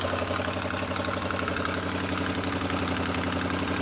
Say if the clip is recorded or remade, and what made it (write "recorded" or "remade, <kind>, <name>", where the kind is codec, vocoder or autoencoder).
recorded